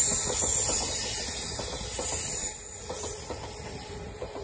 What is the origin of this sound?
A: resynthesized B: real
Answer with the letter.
B